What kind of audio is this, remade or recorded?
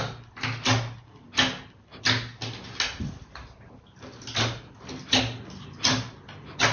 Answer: recorded